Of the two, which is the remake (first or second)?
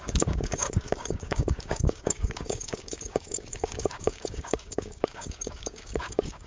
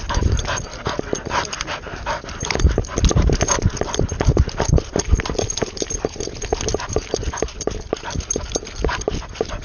first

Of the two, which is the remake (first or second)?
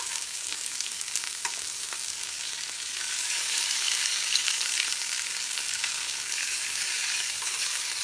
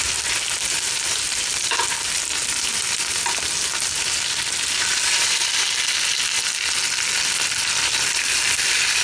first